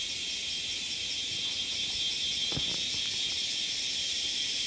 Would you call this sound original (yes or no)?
yes